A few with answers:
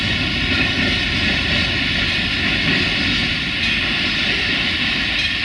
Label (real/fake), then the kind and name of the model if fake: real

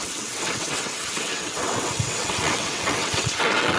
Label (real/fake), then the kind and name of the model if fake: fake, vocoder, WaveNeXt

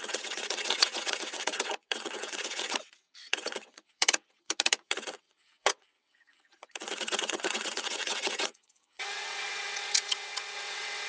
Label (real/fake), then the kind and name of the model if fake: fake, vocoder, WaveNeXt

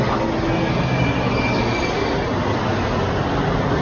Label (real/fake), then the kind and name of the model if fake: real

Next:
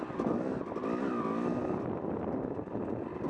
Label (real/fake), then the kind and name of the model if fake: real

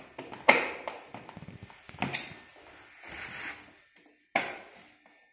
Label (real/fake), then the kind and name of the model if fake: real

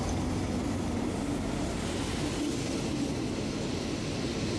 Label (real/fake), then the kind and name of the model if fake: real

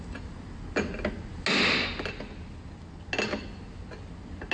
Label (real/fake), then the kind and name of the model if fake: real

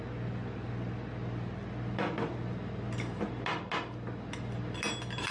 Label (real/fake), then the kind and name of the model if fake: real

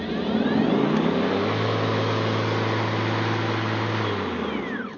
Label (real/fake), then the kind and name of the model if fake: real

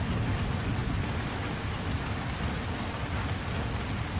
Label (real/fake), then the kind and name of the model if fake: real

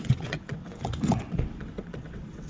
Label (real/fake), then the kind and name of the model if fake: fake, vocoder, WaveNeXt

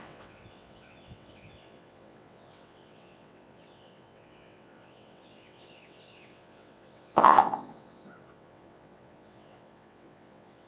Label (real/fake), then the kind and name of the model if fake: fake, vocoder, WaveNeXt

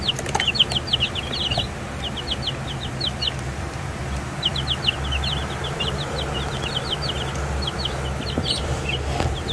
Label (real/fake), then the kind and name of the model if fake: real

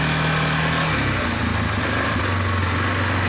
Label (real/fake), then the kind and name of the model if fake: real